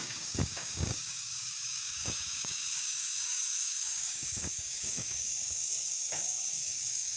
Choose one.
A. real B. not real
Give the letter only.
B